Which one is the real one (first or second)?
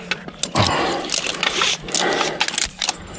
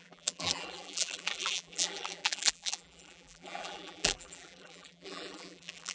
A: first